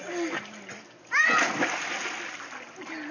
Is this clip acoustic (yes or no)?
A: yes